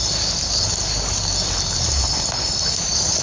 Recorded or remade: recorded